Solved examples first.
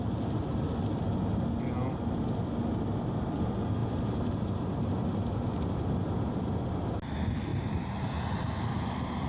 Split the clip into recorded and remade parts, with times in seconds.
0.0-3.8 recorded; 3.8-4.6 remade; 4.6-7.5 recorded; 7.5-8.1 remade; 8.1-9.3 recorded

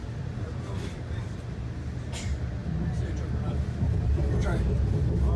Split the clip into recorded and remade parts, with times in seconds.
0.0-2.1 remade; 2.1-5.4 recorded

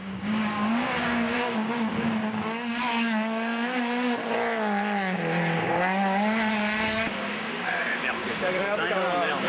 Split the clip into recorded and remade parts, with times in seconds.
0.0-4.2 remade; 4.2-6.5 recorded; 6.5-9.5 remade

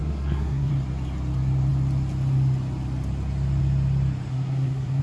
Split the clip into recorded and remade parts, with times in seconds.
0.0-0.7 remade; 0.7-4.3 recorded; 4.3-5.0 remade

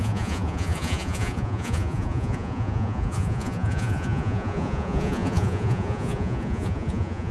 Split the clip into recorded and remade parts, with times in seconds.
0.0-7.3 remade